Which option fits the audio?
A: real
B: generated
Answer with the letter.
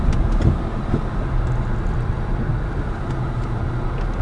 A